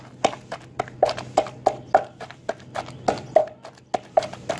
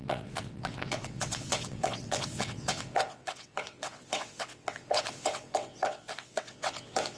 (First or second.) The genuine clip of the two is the first